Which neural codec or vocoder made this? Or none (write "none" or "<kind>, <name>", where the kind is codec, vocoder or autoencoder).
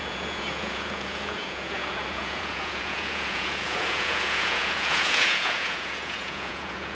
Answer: vocoder, Vocos